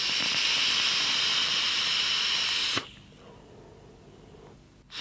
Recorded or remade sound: recorded